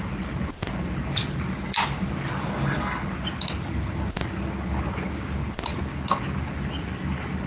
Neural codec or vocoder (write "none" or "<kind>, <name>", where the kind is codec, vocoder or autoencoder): none